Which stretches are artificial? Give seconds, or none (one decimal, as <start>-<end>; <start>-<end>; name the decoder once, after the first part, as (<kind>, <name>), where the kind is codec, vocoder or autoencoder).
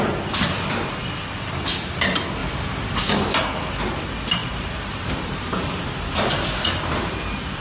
4.4-7.6 (vocoder, BigVGAN v2)